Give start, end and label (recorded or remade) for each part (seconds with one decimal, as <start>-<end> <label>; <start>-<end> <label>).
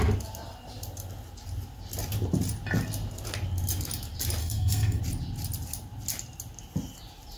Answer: 0.0-4.4 recorded; 4.4-5.0 remade; 5.0-7.4 recorded